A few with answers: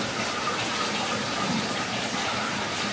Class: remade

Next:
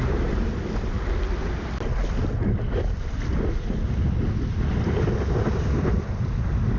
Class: recorded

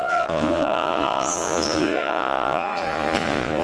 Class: remade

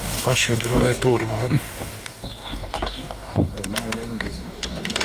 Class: remade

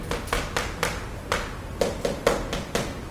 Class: recorded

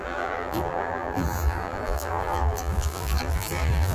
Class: remade